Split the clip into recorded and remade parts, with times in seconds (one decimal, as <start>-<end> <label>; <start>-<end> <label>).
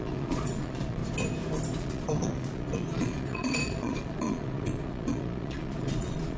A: 0.0-1.0 remade; 1.0-1.8 recorded; 1.8-6.4 remade